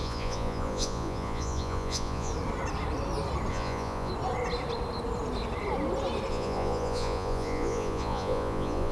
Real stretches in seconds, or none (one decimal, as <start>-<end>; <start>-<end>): 2.3-3.5; 4.1-6.3